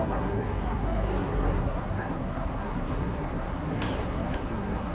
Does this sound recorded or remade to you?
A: remade